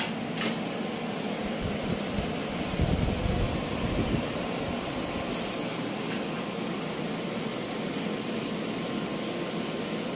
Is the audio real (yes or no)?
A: yes